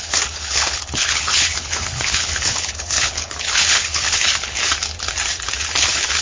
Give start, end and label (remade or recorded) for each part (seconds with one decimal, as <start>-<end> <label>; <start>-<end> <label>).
0.0-4.6 remade; 4.6-5.6 recorded; 5.6-6.2 remade